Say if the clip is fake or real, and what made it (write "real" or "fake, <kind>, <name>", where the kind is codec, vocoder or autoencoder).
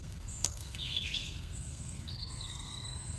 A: fake, codec, SNAC